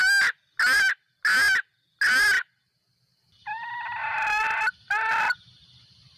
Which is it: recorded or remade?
recorded